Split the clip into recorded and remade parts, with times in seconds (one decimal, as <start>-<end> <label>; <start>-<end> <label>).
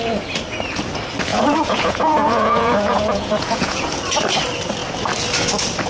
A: 0.0-1.3 recorded; 1.3-3.9 remade; 3.9-5.9 recorded